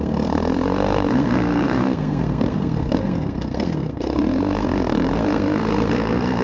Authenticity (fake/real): fake